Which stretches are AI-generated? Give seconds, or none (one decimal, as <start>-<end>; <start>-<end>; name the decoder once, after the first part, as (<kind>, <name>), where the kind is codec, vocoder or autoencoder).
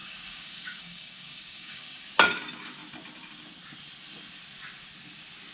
0.0-2.1 (codec, DAC)